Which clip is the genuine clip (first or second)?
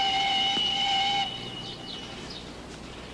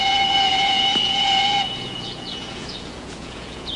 first